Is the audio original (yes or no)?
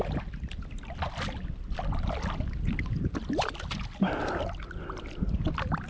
yes